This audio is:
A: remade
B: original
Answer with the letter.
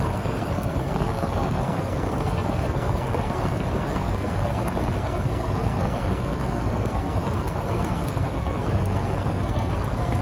A